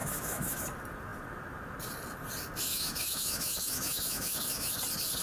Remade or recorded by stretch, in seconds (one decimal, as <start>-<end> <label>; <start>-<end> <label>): 0.0-0.6 remade; 0.6-2.7 recorded; 2.7-4.7 remade; 4.7-5.2 recorded